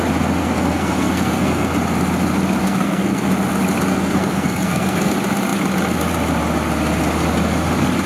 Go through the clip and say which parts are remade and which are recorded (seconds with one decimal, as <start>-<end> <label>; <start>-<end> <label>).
0.0-0.4 recorded; 0.4-1.7 remade; 1.7-2.6 recorded; 2.6-3.3 remade; 3.3-3.9 recorded; 3.9-5.1 remade; 5.1-8.1 recorded